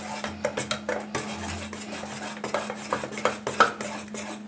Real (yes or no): yes